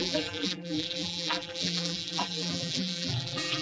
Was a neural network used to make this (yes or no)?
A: yes